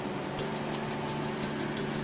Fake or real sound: real